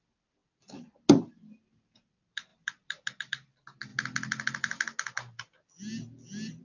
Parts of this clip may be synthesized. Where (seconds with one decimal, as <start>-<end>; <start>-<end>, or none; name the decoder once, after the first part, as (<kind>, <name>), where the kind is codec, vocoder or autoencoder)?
0.0-0.4 (vocoder, BigVGAN v2); 1.2-3.9